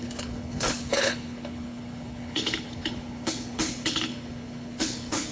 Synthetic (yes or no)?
yes